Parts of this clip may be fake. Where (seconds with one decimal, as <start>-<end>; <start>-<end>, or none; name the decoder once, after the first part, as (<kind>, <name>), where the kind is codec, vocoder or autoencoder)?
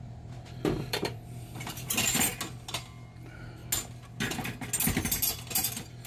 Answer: 0.0-2.3 (vocoder, BigVGAN v2); 3.2-3.6